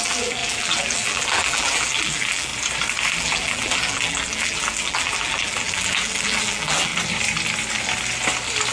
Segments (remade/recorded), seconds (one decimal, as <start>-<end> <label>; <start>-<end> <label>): 0.0-2.5 remade; 2.5-3.2 recorded; 3.2-6.9 remade; 6.9-8.7 recorded